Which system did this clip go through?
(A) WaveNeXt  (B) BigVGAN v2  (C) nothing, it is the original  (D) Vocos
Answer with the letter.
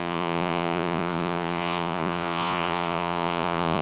D